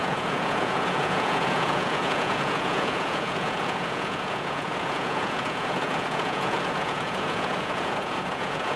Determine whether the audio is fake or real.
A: fake